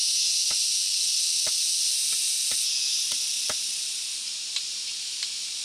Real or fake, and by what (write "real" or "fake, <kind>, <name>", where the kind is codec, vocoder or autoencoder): real